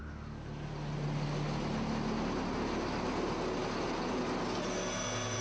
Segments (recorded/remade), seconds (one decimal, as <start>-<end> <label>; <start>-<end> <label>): 0.0-5.4 recorded